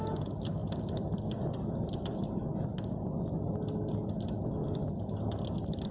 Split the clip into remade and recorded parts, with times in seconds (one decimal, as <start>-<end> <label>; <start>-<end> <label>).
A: 0.0-5.9 recorded